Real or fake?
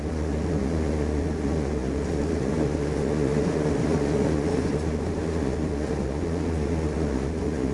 fake